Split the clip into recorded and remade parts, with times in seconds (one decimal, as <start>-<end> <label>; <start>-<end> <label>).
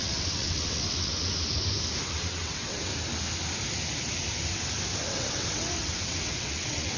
0.0-1.1 remade; 1.1-2.1 recorded; 2.1-2.9 remade; 2.9-5.1 recorded; 5.1-7.0 remade